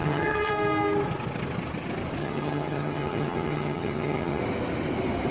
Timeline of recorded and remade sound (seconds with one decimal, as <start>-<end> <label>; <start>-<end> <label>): 0.0-0.5 remade; 0.5-2.2 recorded; 2.2-4.4 remade; 4.4-5.3 recorded